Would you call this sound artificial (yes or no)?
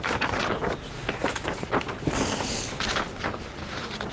no